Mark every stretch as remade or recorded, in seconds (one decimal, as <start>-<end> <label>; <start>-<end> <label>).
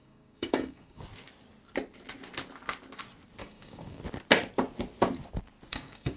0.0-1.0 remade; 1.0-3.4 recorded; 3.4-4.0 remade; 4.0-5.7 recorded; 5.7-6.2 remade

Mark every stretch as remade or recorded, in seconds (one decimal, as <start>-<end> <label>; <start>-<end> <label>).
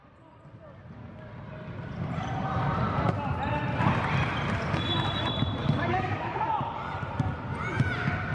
0.0-5.6 recorded; 5.6-6.5 remade; 6.5-8.3 recorded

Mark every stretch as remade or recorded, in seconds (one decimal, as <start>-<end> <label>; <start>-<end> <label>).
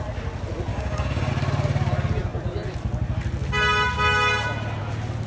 0.0-0.7 recorded; 0.7-1.3 remade; 1.3-5.3 recorded